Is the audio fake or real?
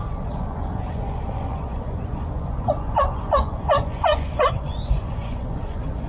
fake